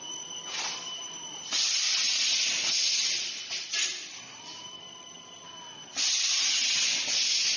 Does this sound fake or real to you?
real